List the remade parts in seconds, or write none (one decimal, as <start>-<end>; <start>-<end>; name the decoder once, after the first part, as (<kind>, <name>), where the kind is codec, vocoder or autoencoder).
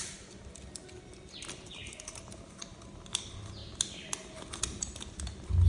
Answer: none